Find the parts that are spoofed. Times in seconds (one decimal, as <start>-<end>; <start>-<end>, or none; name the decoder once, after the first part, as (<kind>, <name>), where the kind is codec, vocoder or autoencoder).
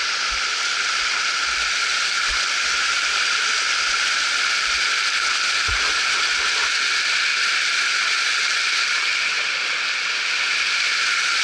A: none